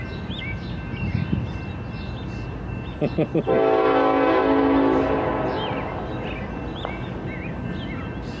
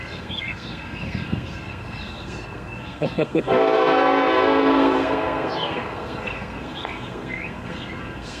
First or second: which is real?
first